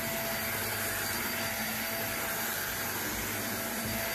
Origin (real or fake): real